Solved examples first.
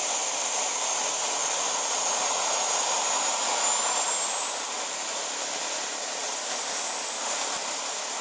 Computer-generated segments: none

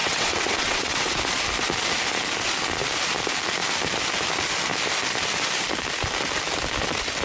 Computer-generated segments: 0.0-1.2 (vocoder, WaveNeXt)

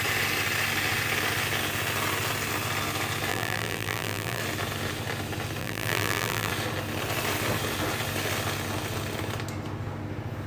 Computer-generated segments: 3.3-4.4 (vocoder, BigVGAN v2); 5.6-6.5

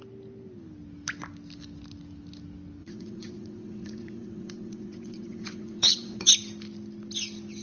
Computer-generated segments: 2.8-6.3 (vocoder, WaveNeXt)

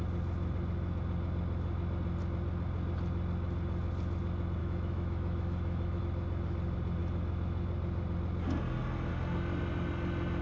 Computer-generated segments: 4.6-6.0 (autoencoder, DAC-VAE)

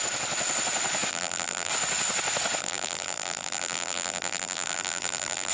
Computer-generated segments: 1.1-1.7 (vocoder, BigVGAN v2); 2.6-5.5